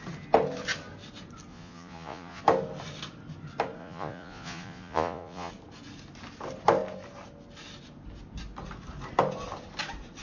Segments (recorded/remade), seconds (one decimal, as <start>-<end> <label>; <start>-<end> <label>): 0.0-1.5 recorded; 1.5-2.4 remade; 2.4-3.8 recorded; 3.8-5.5 remade; 5.5-10.2 recorded